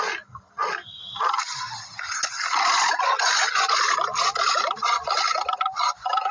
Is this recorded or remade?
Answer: recorded